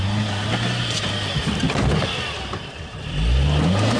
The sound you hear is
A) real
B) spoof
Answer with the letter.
A